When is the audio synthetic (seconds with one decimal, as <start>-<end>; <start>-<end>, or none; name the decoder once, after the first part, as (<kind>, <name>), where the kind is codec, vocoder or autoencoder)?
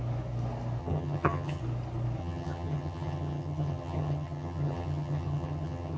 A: 0.8-1.6 (vocoder, HiFi-GAN); 2.2-6.0